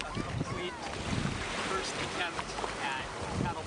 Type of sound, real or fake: real